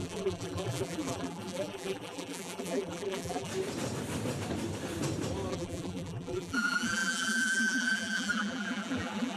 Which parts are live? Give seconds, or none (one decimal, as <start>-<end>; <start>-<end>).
3.5-5.5